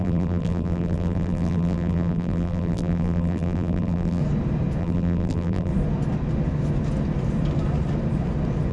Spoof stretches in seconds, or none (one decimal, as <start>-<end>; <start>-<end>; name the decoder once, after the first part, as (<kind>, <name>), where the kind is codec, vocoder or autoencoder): 0.0-4.2 (vocoder, BigVGAN v2); 4.8-5.7